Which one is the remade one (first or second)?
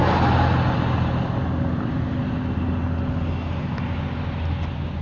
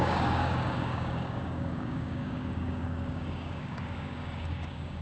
second